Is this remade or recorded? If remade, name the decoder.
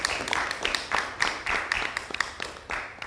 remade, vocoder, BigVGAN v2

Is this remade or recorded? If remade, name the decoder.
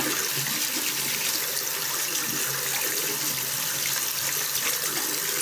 recorded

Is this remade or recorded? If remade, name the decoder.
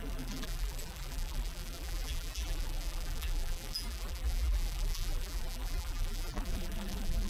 remade, vocoder, BigVGAN v2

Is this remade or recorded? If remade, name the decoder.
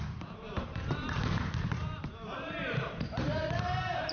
remade, vocoder, BigVGAN v2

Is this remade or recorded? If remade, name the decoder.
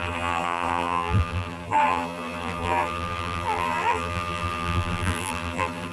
remade, vocoder, BigVGAN v2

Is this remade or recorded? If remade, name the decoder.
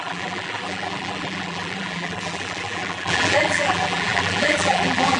remade, vocoder, BigVGAN v2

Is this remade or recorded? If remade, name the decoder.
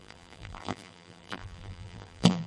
remade, vocoder, BigVGAN v2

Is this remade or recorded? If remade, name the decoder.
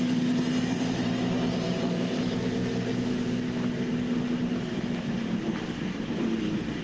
recorded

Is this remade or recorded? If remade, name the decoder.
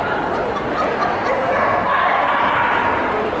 remade, vocoder, BigVGAN v2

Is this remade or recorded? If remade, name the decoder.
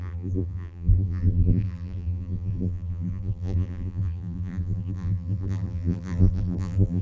remade, vocoder, BigVGAN v2